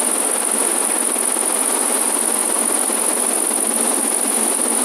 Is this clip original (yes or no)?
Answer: yes